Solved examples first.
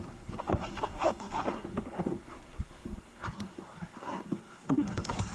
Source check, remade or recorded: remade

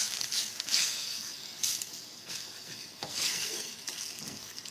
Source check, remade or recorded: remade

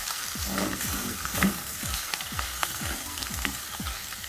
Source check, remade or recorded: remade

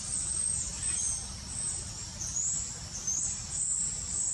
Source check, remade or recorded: recorded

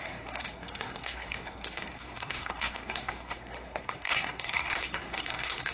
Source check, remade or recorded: remade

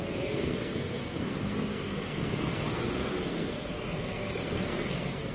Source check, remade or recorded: remade